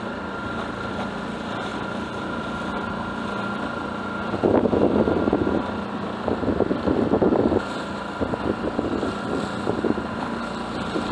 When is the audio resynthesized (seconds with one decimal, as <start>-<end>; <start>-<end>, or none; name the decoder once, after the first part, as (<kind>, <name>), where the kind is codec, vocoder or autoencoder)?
none